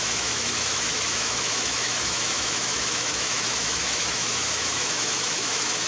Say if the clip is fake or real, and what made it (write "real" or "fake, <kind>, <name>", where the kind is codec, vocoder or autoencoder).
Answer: fake, autoencoder, DAC-VAE